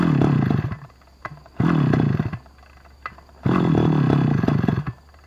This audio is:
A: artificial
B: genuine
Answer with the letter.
B